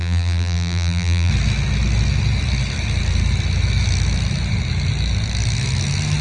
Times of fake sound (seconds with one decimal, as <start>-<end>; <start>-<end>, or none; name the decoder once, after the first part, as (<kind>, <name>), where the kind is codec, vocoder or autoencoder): 0.0-1.3 (vocoder, BigVGAN v2)